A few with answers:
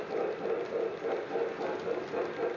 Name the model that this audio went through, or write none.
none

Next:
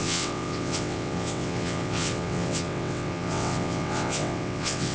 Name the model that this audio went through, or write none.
vocoder, WaveNeXt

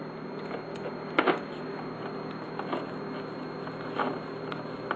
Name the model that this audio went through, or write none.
none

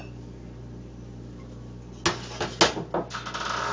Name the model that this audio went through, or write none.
none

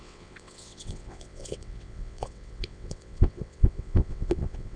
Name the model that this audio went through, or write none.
vocoder, WaveNeXt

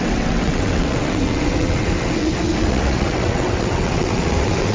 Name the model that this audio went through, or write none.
vocoder, WaveNeXt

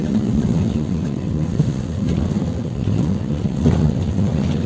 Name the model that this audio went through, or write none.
vocoder, WaveNeXt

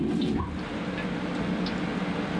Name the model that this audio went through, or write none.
none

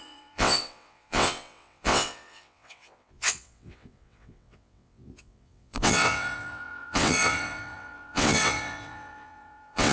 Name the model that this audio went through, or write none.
vocoder, WaveNeXt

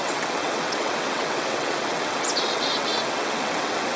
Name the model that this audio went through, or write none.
vocoder, WaveNeXt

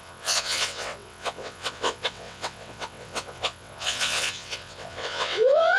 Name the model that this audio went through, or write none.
vocoder, WaveNeXt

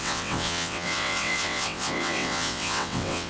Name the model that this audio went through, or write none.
vocoder, WaveNeXt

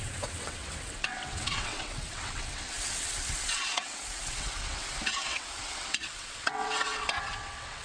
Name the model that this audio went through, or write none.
vocoder, WaveNeXt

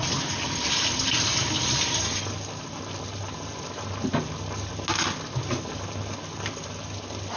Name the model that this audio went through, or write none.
none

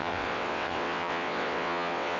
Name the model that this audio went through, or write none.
vocoder, WaveNeXt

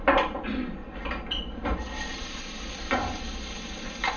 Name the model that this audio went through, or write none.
none